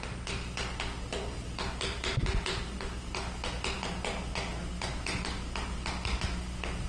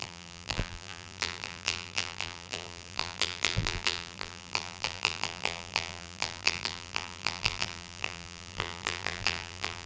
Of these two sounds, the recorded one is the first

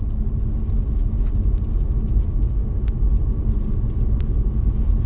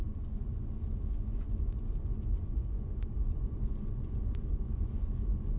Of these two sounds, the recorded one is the first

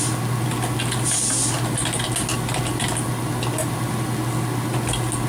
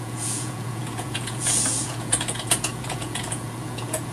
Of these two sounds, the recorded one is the first